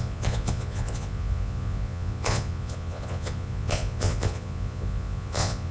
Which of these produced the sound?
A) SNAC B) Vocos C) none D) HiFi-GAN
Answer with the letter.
B